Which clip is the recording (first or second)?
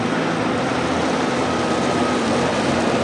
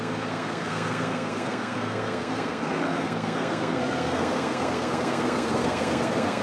first